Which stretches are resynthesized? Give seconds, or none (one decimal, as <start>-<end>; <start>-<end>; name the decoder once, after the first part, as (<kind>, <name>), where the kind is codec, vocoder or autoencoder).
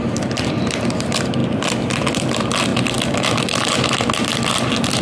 0.0-2.7 (vocoder, BigVGAN v2)